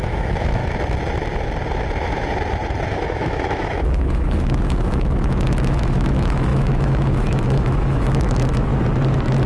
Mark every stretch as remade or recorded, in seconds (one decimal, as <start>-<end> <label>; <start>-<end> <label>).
0.0-0.6 remade; 0.6-2.9 recorded; 2.9-8.7 remade; 8.7-9.5 recorded